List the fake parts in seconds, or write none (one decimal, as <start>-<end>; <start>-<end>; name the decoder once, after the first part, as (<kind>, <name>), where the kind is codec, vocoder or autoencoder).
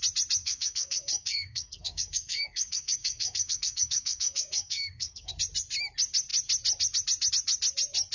0.4-5.3 (codec, SNAC)